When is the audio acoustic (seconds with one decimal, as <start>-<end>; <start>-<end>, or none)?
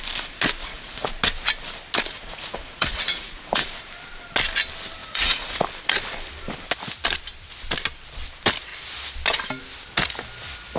0.0-0.6; 1.1-2.1; 3.7-5.0; 5.6-10.8